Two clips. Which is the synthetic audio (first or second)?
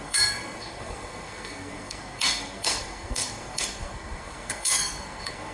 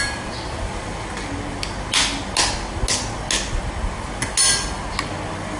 first